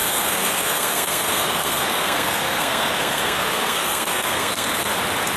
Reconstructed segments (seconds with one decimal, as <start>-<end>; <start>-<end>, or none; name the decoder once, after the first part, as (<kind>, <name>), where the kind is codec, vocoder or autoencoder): 0.0-4.9 (codec, SNAC)